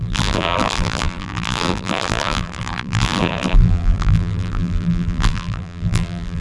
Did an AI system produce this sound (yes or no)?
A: yes